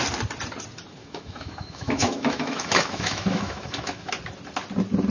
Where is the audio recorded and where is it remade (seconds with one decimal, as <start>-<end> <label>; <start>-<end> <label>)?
0.0-1.0 recorded; 1.0-4.1 remade; 4.1-5.1 recorded